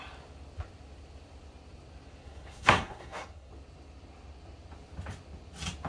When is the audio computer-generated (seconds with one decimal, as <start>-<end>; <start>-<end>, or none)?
2.2-3.5